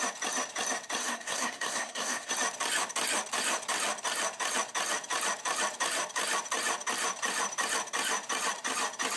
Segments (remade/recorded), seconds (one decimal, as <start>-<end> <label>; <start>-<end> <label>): 0.0-1.0 recorded; 1.0-2.3 remade; 2.3-9.2 recorded